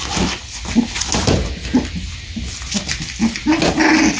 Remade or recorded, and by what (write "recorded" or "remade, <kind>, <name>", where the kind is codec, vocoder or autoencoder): recorded